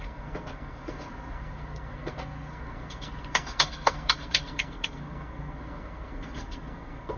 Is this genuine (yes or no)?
no